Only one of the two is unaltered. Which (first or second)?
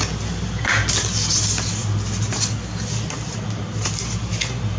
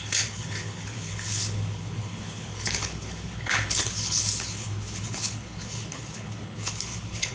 first